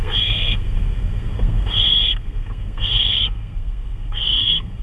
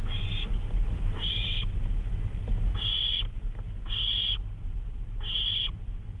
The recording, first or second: second